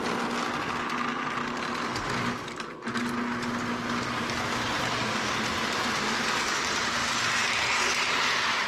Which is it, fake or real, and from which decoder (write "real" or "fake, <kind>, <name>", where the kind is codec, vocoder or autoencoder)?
real